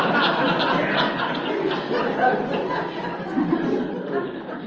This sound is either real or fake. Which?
real